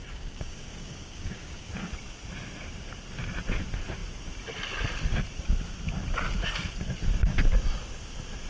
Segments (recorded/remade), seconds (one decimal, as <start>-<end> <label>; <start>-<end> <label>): 0.0-1.7 remade; 1.7-8.5 recorded